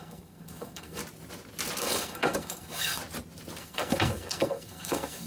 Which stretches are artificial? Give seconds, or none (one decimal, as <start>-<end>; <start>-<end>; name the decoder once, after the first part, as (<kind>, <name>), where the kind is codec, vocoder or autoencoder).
0.0-1.0 (codec, SNAC); 1.8-3.0; 3.6-5.3